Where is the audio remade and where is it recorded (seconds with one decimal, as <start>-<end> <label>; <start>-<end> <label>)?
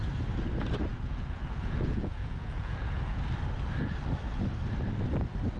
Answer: 0.0-0.9 recorded; 0.9-3.2 remade; 3.2-5.6 recorded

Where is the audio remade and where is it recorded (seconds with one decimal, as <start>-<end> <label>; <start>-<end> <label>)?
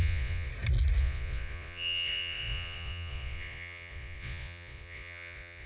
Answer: 0.0-0.5 remade; 0.5-1.0 recorded; 1.0-5.7 remade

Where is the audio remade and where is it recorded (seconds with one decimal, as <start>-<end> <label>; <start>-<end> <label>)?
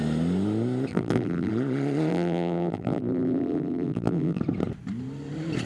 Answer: 0.0-0.9 recorded; 0.9-1.5 remade; 1.5-2.1 recorded; 2.1-4.4 remade; 4.4-5.7 recorded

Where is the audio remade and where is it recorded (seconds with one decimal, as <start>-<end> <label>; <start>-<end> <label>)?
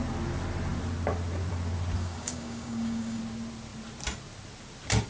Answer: 0.0-2.0 recorded; 2.0-3.2 remade; 3.2-5.1 recorded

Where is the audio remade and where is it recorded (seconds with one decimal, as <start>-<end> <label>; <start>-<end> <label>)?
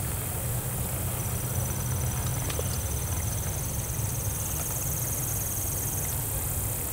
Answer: 0.0-6.9 recorded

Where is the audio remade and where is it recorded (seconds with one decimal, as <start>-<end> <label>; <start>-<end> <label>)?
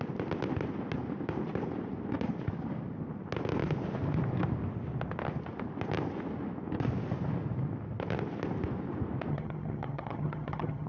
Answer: 0.0-9.3 recorded; 9.3-10.9 remade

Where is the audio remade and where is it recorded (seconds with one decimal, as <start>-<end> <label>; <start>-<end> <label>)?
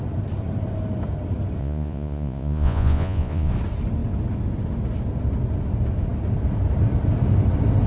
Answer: 0.0-1.6 recorded; 1.6-3.5 remade; 3.5-7.9 recorded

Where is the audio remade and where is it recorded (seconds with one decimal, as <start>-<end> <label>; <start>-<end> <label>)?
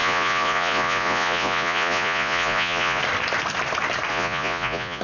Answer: 0.0-3.0 remade; 3.0-4.1 recorded; 4.1-5.0 remade